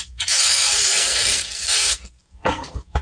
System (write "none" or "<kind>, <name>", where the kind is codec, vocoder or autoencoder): codec, SNAC